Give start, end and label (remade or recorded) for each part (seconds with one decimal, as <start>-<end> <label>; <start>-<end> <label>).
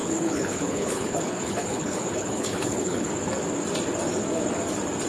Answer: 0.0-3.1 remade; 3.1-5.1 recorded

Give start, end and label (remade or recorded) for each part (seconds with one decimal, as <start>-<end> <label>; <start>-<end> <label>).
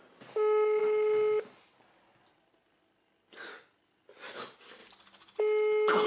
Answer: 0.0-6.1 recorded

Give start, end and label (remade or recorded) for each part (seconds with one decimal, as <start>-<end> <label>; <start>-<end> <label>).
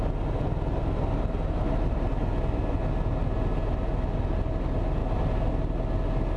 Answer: 0.0-6.4 recorded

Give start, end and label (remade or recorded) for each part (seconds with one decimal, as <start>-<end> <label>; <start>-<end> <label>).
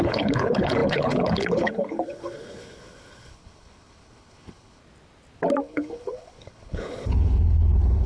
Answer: 0.0-4.8 remade; 4.8-5.6 recorded; 5.6-8.1 remade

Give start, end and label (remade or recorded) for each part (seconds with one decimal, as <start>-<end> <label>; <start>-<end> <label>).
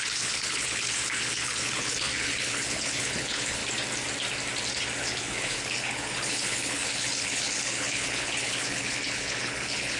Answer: 0.0-3.6 remade; 3.6-5.0 recorded; 5.0-10.0 remade